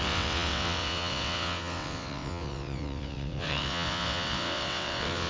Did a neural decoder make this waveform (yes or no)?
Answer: yes